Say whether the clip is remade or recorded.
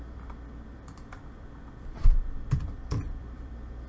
remade